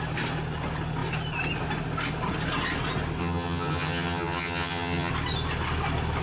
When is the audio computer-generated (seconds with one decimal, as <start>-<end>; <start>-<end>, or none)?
3.2-5.1